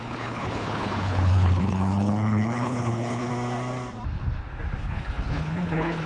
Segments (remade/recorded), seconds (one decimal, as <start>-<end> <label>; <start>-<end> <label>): 0.0-3.3 remade; 3.3-4.8 recorded; 4.8-6.1 remade